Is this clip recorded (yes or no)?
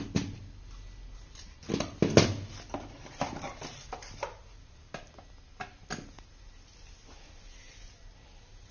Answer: yes